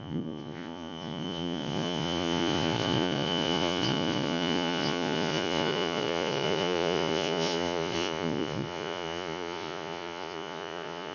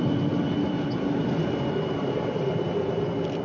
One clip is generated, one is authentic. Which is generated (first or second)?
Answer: first